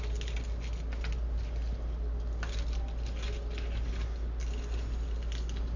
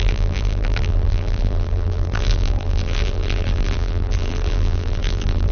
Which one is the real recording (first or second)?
first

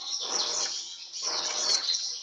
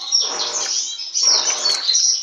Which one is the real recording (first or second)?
second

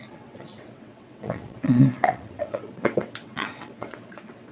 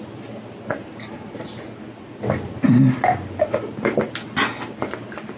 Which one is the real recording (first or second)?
second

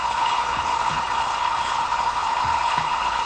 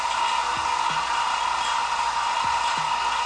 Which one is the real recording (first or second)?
second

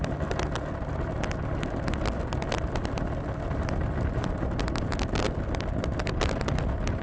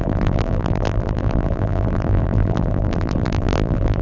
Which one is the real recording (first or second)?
first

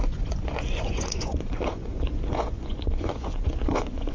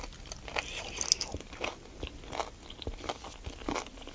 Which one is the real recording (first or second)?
second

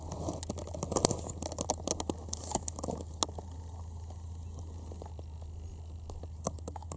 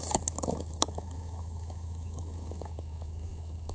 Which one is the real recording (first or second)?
first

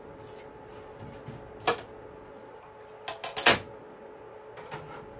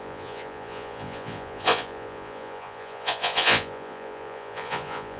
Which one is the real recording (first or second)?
first